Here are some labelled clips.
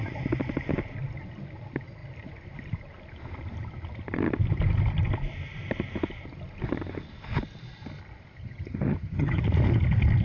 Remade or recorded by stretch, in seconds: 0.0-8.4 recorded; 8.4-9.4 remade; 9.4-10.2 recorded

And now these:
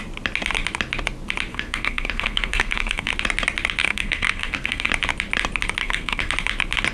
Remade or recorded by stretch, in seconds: 0.0-1.5 recorded; 1.5-3.1 remade; 3.1-3.8 recorded; 3.8-4.9 remade; 4.9-5.8 recorded; 5.8-6.3 remade; 6.3-6.9 recorded

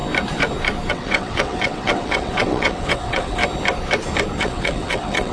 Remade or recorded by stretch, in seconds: 0.0-0.9 recorded; 0.9-3.4 remade; 3.4-4.4 recorded; 4.4-5.3 remade

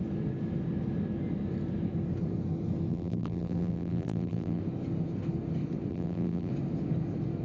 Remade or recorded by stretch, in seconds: 0.0-2.9 recorded; 2.9-4.6 remade; 4.6-5.9 recorded; 5.9-6.5 remade; 6.5-7.4 recorded

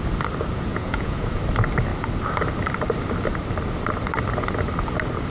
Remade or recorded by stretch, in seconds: 0.0-0.7 recorded; 0.7-1.4 remade; 1.4-5.3 recorded